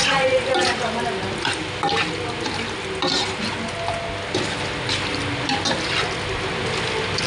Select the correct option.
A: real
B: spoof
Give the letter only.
A